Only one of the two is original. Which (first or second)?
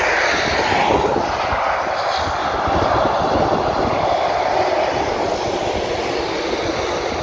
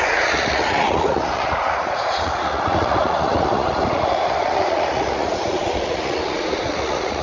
first